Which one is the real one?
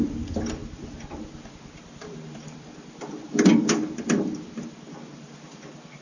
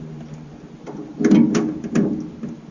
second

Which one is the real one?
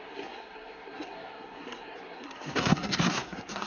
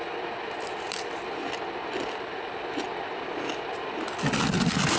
second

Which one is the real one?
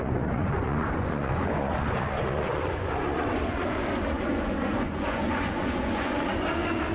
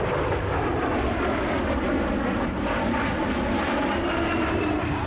second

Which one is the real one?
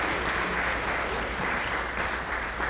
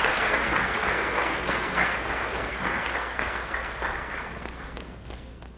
first